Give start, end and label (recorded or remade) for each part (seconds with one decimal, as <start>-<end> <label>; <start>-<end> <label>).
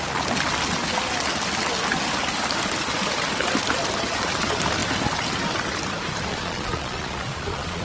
0.0-6.3 recorded; 6.3-7.8 remade